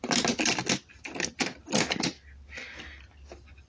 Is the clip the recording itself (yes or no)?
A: yes